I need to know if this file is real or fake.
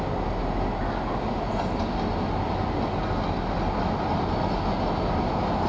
real